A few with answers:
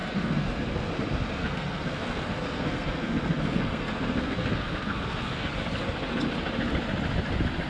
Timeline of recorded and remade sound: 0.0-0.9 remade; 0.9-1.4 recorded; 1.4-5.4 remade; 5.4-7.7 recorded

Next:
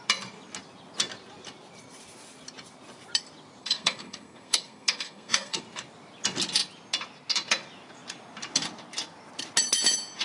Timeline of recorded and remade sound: 0.0-3.6 recorded; 3.6-5.6 remade; 5.6-10.2 recorded

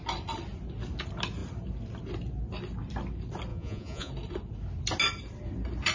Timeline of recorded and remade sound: 0.0-3.5 recorded; 3.5-4.1 remade; 4.1-5.9 recorded

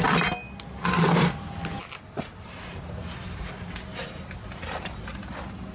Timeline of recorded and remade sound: 0.0-5.7 recorded

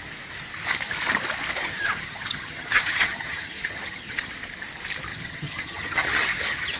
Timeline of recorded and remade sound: 0.0-1.6 recorded; 1.6-4.3 remade; 4.3-5.1 recorded; 5.1-6.8 remade

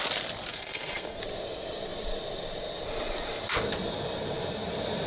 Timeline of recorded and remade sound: 0.0-0.5 recorded; 0.5-1.2 remade; 1.2-5.1 recorded

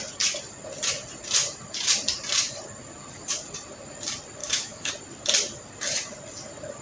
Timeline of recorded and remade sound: 0.0-4.4 recorded; 4.4-4.9 remade; 4.9-6.8 recorded